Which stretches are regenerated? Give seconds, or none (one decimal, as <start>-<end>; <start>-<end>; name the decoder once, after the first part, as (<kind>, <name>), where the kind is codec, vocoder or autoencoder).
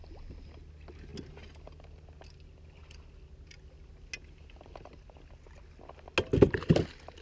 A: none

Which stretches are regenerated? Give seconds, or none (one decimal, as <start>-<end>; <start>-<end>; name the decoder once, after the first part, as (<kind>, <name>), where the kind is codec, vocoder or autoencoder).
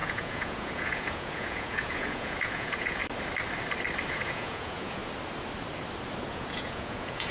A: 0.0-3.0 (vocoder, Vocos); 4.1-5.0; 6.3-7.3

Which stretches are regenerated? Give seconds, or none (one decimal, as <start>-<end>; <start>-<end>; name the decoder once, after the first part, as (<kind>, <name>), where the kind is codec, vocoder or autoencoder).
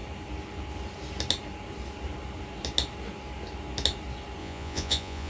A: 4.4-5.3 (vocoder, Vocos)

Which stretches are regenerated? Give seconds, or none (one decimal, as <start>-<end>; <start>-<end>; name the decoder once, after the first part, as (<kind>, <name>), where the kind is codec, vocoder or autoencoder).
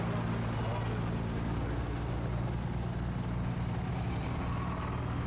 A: none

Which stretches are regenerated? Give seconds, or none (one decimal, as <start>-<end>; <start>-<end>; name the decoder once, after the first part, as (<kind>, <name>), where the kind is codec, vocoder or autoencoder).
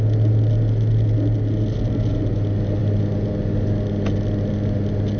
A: none